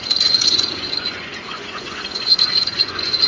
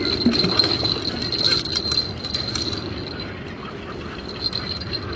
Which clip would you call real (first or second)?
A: second